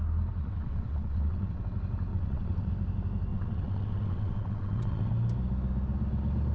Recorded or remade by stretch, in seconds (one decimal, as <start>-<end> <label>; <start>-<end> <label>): 0.0-0.4 recorded; 0.4-1.6 remade; 1.6-2.1 recorded; 2.1-2.7 remade; 2.7-3.3 recorded; 3.3-5.1 remade; 5.1-6.5 recorded

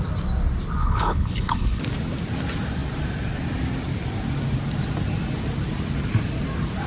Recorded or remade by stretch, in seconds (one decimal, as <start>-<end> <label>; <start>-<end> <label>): 0.0-0.8 recorded; 0.8-1.8 remade; 1.8-6.9 recorded

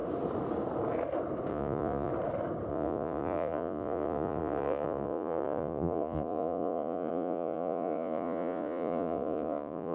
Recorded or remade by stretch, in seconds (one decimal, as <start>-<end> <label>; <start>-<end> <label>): 0.0-1.5 recorded; 1.5-2.1 remade; 2.1-2.7 recorded; 2.7-9.9 remade

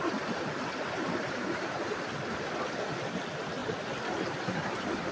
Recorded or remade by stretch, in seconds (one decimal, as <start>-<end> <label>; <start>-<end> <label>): 0.0-5.1 recorded

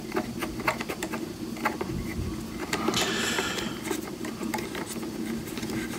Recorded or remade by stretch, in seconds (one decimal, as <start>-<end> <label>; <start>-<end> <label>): 0.0-6.0 recorded

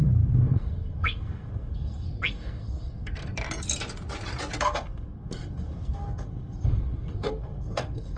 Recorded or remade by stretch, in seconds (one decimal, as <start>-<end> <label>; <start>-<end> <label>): 0.0-3.3 remade; 3.3-4.6 recorded; 4.6-8.2 remade

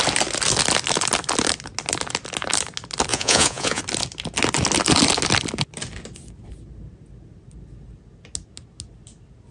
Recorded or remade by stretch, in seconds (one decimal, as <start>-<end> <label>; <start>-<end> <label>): 0.0-3.1 recorded; 3.1-3.8 remade; 3.8-9.5 recorded

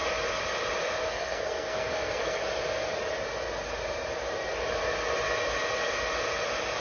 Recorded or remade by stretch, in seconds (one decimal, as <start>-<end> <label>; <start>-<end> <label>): 0.0-0.9 recorded; 0.9-2.4 remade; 2.4-6.8 recorded